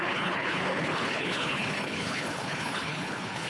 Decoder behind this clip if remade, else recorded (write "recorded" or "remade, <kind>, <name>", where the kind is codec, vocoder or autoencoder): remade, codec, HILCodec